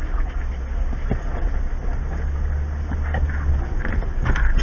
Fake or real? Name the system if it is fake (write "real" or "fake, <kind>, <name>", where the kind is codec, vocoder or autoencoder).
real